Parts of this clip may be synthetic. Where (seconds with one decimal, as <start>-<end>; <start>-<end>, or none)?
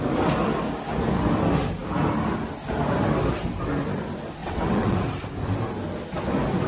4.4-5.0